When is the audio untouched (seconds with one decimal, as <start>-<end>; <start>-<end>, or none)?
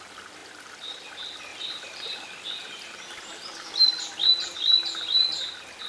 0.0-0.4; 1.1-1.5; 4.3-5.9